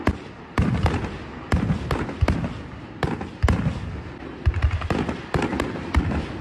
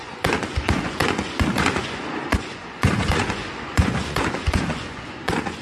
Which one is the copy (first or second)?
second